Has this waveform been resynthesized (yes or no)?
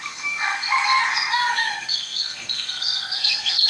yes